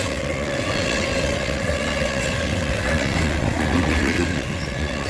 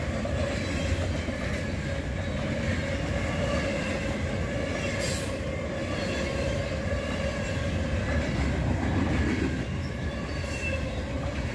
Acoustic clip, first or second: second